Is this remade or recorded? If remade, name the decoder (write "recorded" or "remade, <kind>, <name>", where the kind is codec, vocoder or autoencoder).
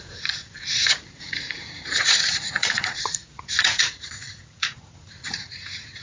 remade, vocoder, Vocos